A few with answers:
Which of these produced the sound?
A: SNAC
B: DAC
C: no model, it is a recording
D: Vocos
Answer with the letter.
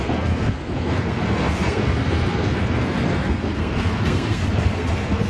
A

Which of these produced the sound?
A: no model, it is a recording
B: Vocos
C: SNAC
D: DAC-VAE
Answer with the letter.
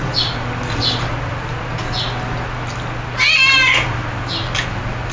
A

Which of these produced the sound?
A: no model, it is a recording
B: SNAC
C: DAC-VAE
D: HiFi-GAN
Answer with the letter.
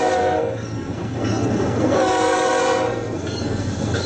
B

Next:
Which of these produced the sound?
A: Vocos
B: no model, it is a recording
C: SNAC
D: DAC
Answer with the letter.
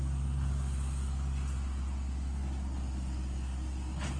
B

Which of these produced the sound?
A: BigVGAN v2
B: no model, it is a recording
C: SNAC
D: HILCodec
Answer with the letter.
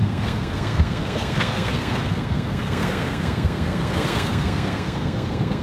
C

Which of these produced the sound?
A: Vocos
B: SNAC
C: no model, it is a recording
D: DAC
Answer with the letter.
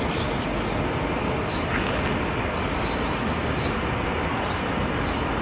C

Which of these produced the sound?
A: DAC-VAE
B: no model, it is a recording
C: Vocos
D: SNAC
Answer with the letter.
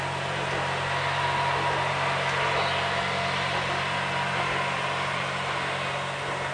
B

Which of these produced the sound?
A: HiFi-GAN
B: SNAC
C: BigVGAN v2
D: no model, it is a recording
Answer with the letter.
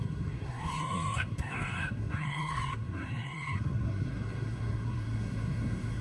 B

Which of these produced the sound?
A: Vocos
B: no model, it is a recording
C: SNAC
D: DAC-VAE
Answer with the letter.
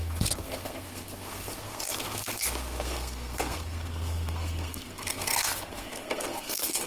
C